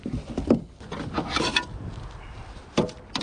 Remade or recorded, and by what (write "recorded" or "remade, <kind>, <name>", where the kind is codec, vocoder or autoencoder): recorded